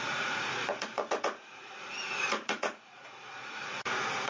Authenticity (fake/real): fake